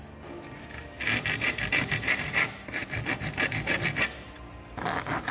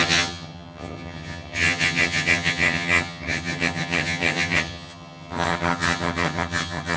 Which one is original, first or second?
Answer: first